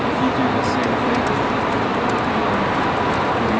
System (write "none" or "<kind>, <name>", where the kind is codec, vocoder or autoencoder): none